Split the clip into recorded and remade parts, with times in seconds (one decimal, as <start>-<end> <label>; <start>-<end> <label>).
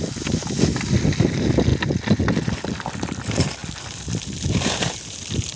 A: 0.0-5.6 recorded